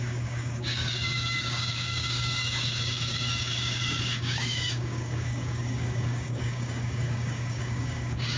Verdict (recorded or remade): remade